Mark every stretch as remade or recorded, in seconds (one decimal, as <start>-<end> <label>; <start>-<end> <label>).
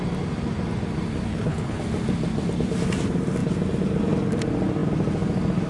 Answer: 0.0-1.3 recorded; 1.3-1.8 remade; 1.8-5.7 recorded